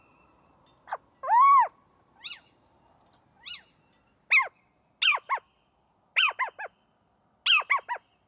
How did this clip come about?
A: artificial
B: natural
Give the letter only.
B